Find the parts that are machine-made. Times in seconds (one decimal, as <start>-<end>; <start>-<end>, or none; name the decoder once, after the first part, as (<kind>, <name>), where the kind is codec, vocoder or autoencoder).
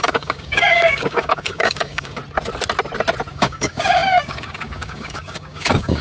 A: 0.0-2.2 (codec, DAC); 3.3-6.0